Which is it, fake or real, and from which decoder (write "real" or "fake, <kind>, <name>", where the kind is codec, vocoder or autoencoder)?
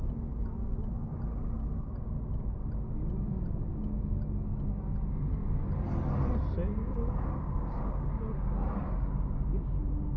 real